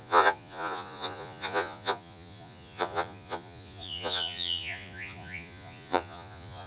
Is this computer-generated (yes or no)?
yes